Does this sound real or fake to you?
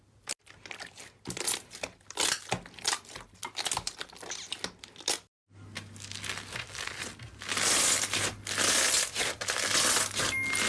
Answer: real